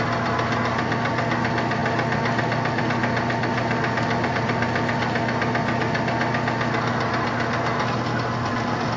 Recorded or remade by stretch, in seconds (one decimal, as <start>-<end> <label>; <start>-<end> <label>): 0.0-9.0 recorded